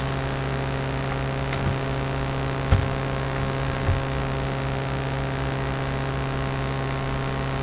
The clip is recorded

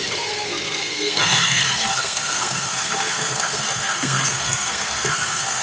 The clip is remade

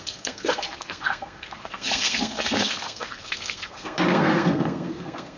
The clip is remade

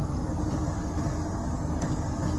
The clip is recorded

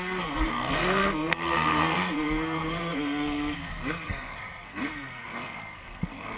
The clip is remade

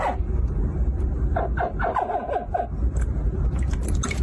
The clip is recorded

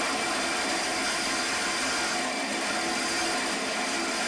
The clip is recorded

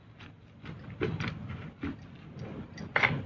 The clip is recorded